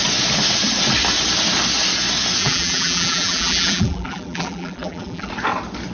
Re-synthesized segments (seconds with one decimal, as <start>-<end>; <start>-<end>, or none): 2.4-5.3